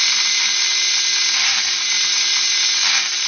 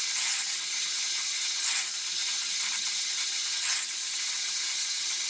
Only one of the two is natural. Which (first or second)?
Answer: first